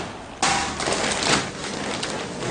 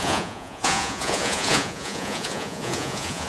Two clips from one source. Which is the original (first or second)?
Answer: first